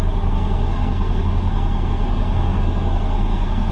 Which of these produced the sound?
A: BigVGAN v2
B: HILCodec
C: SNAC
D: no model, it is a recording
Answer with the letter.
C